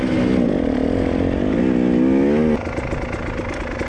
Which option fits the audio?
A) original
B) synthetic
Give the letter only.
A